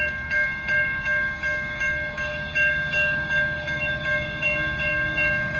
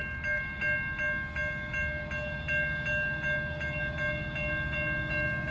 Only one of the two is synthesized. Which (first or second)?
first